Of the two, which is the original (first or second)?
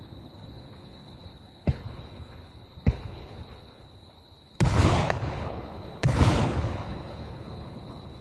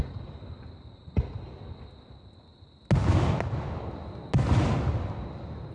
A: second